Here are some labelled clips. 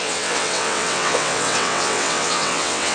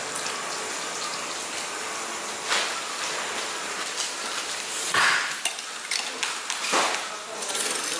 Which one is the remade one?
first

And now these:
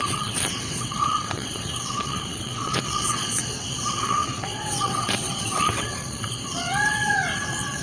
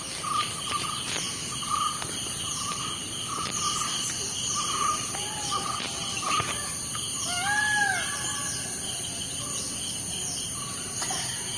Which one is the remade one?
first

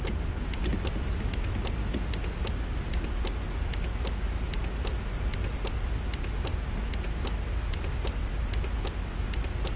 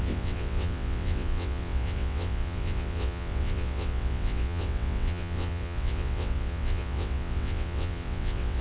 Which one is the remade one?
second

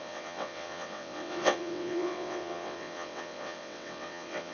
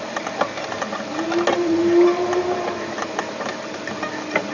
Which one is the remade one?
first